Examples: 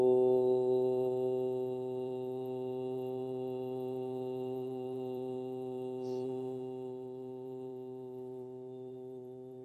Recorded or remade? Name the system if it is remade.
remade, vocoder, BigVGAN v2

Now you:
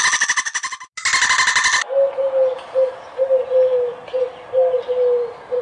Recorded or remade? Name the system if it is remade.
recorded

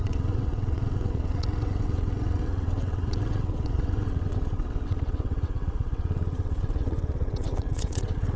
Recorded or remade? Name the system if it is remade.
remade, vocoder, WaveNeXt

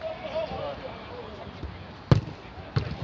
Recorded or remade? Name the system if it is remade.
recorded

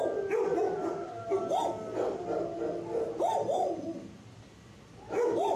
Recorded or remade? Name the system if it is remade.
recorded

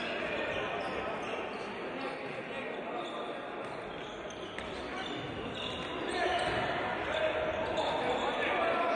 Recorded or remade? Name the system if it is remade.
recorded